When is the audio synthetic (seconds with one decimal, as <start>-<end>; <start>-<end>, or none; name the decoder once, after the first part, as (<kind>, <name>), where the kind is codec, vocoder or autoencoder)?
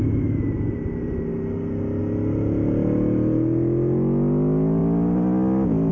none